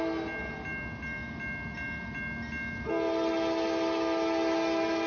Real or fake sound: real